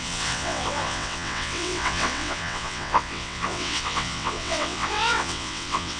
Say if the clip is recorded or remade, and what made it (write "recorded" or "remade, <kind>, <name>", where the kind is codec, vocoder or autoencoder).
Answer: remade, vocoder, WaveNeXt